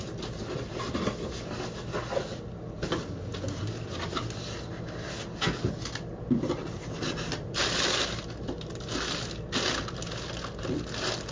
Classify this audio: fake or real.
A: real